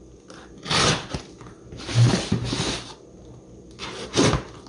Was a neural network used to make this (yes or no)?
no